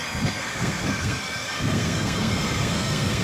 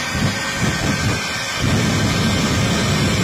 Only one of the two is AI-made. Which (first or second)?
first